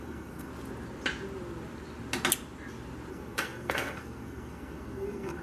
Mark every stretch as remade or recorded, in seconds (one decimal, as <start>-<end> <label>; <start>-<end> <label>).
0.0-0.5 remade; 0.5-3.1 recorded; 3.1-5.4 remade